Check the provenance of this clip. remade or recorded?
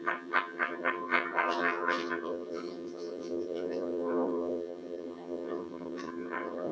remade